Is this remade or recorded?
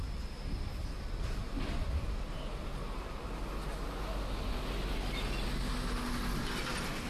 recorded